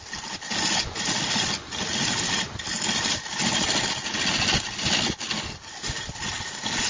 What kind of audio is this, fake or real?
real